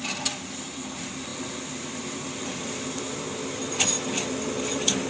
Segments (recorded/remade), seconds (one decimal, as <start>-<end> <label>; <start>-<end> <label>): 0.0-5.1 recorded